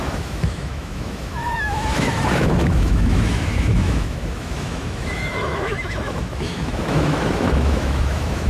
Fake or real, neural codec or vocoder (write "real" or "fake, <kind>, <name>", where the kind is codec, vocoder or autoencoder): fake, autoencoder, DAC-VAE